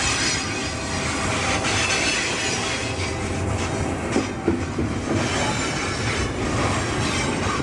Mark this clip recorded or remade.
recorded